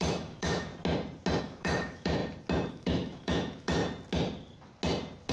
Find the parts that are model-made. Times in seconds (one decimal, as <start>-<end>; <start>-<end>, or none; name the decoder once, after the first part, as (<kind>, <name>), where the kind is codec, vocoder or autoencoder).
0.0-0.7 (autoencoder, DAC-VAE); 1.4-2.2; 2.7-3.8